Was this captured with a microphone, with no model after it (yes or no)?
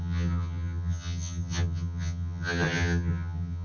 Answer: no